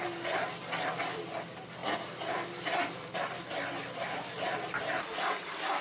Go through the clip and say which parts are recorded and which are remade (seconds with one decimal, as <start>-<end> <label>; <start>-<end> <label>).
0.0-5.8 recorded